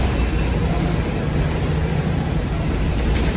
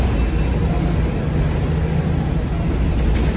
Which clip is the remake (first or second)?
first